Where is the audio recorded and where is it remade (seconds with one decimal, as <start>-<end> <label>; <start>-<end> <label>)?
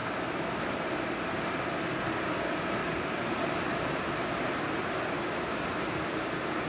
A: 0.0-1.3 remade; 1.3-2.8 recorded; 2.8-4.5 remade; 4.5-6.7 recorded